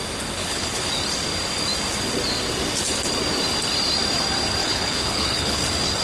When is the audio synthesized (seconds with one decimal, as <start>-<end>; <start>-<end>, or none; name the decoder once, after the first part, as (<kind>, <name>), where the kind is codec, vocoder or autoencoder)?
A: 0.4-0.9 (codec, HILCodec); 4.6-5.6